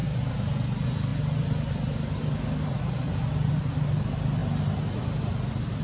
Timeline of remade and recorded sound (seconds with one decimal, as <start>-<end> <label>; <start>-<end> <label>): 0.0-5.8 recorded